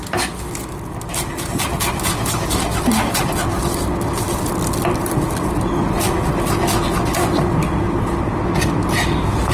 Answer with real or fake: real